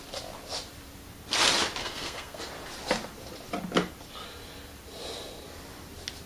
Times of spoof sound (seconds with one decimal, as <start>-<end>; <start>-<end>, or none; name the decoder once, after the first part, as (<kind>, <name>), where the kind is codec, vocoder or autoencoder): 1.8-2.4 (codec, SNAC)